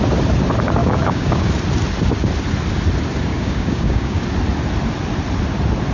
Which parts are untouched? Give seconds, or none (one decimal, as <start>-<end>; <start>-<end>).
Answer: 0.0-0.8; 1.5-3.3; 4.2-5.9